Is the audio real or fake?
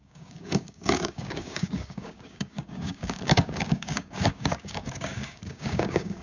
fake